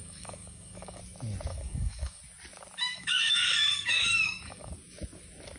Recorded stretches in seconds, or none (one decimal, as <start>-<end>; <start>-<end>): 1.0-1.5; 2.2-2.8; 4.7-5.6